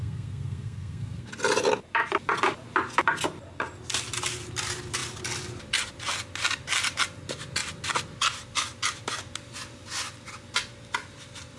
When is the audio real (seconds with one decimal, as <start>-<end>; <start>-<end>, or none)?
1.3-11.6